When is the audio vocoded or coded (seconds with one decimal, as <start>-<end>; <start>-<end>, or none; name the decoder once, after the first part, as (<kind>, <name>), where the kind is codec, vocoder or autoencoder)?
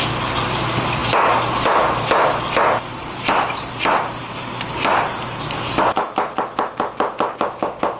none